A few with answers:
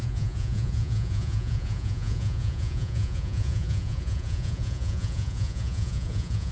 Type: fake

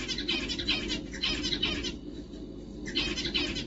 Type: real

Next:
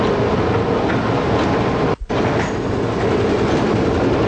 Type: real